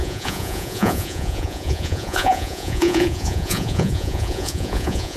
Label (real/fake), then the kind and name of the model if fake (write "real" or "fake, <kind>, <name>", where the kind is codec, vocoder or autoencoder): fake, vocoder, Vocos